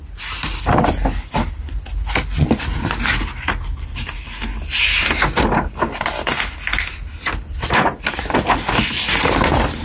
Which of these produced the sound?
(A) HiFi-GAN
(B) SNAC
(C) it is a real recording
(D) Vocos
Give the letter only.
C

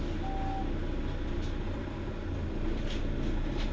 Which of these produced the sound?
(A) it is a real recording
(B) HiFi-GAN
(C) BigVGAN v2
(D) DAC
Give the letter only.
A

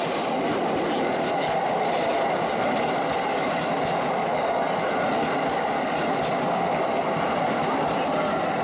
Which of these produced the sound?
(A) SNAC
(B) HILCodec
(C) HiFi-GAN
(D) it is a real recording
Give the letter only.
D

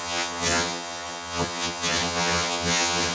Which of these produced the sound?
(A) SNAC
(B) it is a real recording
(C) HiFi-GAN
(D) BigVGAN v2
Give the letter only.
C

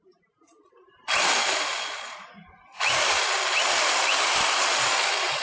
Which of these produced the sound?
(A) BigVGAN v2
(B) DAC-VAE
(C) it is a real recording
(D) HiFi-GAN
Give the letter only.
C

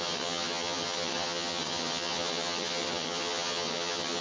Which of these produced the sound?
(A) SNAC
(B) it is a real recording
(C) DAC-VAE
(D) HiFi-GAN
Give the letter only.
D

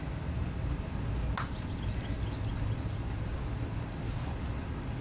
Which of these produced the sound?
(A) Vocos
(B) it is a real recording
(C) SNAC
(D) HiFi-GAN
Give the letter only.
B